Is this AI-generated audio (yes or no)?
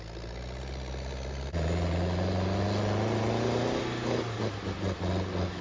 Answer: no